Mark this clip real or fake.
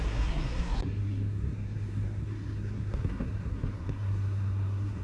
fake